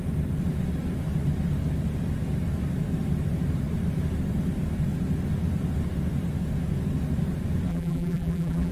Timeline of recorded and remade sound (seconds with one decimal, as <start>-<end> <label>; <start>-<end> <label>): 0.0-7.7 recorded; 7.7-8.7 remade